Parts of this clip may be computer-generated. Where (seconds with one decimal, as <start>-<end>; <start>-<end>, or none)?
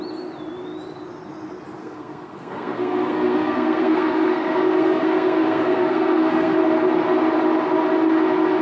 1.8-6.6